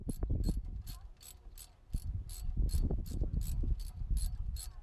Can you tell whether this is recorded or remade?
recorded